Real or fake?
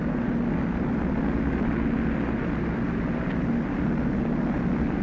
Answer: real